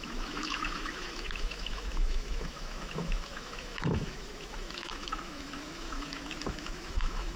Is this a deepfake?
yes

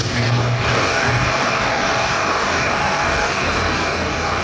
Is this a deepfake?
yes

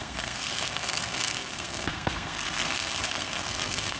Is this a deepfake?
yes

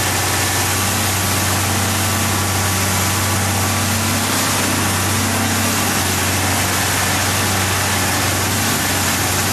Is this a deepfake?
no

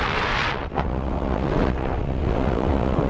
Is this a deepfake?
yes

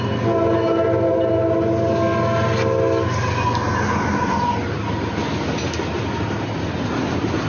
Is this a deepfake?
no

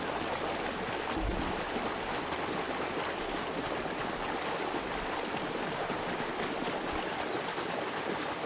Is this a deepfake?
no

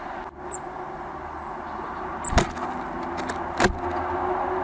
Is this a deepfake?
no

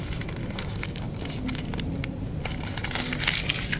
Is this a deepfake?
no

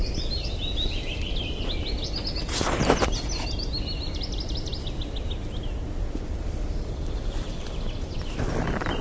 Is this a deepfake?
no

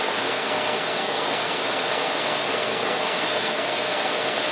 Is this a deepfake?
yes